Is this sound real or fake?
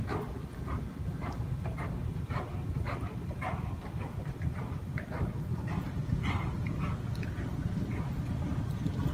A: real